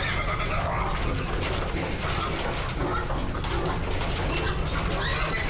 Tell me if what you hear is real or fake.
real